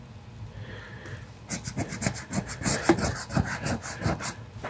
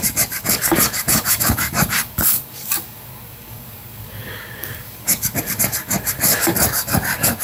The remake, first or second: second